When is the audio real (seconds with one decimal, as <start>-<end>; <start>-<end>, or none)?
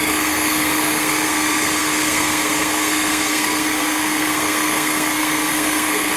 none